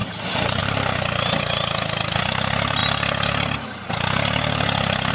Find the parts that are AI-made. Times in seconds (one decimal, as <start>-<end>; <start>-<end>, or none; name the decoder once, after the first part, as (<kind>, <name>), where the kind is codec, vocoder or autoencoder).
none